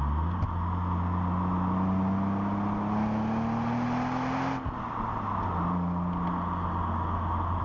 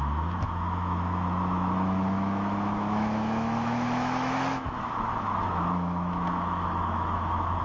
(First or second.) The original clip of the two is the first